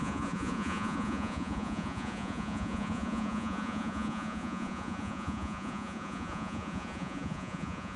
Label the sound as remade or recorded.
remade